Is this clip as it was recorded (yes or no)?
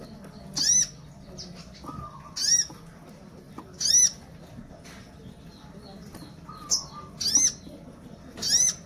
yes